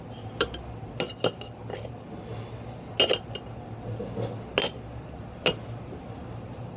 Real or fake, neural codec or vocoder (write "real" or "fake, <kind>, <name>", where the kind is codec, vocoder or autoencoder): real